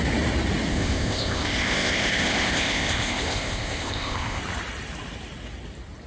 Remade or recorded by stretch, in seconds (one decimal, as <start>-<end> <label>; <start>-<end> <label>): 0.0-0.7 recorded; 0.7-4.4 remade; 4.4-6.1 recorded